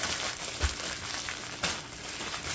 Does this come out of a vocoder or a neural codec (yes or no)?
no